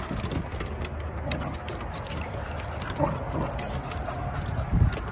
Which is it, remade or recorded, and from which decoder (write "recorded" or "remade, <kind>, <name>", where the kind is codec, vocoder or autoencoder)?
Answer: recorded